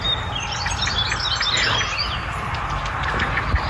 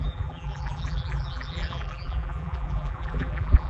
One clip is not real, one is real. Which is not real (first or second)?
second